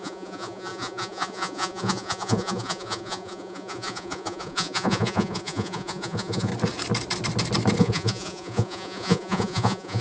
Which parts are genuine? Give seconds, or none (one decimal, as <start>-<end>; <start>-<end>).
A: 6.5-7.8